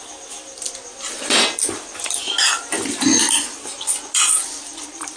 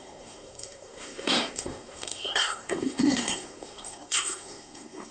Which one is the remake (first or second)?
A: second